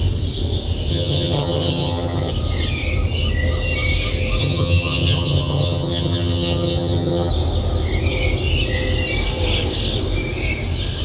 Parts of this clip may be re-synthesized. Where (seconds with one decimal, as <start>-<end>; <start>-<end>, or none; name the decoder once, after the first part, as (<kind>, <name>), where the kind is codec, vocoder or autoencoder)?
0.9-2.3 (vocoder, HiFi-GAN); 4.4-7.3